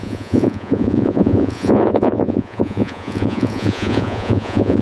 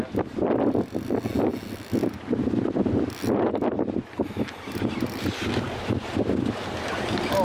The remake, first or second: first